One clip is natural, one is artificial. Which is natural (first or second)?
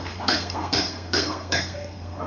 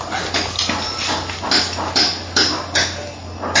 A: second